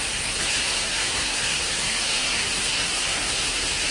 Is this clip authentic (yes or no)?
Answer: no